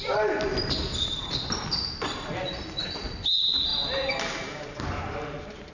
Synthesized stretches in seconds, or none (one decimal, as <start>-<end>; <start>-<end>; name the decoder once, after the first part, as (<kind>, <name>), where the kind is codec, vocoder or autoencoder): none